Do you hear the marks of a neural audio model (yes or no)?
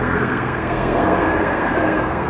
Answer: yes